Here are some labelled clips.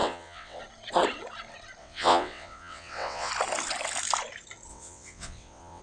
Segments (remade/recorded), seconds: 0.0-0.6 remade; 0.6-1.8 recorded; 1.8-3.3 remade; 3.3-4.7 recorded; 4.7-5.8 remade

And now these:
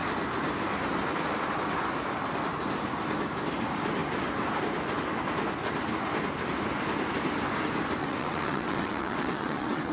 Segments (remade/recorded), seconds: 0.0-8.0 recorded; 8.0-9.9 remade

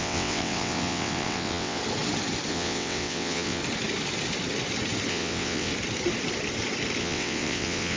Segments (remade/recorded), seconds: 0.0-1.8 remade; 1.8-2.5 recorded; 2.5-3.6 remade; 3.6-5.1 recorded; 5.1-5.7 remade; 5.7-7.0 recorded; 7.0-8.0 remade

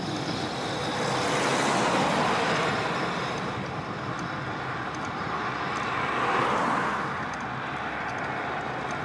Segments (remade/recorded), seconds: 0.0-9.0 recorded

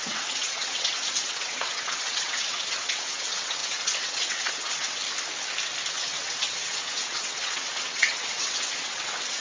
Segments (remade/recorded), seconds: 0.0-5.0 remade; 5.0-5.9 recorded; 5.9-9.4 remade